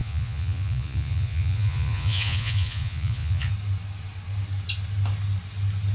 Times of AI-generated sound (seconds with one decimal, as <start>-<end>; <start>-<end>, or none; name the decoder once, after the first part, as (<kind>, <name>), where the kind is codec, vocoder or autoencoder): 0.0-3.5 (vocoder, Vocos)